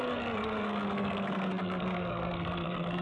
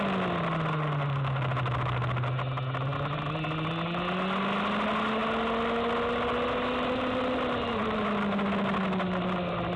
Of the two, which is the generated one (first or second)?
first